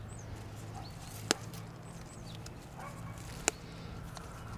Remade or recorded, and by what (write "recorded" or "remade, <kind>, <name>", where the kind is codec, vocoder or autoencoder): recorded